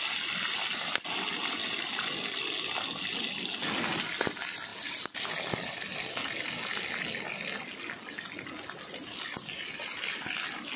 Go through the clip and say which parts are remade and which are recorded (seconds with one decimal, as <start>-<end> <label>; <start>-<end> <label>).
0.0-10.8 recorded